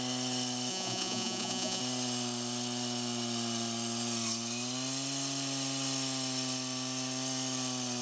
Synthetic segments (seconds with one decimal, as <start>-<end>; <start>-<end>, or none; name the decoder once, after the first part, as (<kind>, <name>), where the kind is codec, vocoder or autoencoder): 0.7-1.8 (vocoder, Vocos)